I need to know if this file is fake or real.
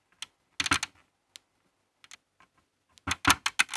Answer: real